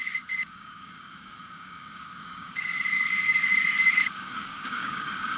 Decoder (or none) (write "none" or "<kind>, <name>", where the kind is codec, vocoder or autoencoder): codec, DAC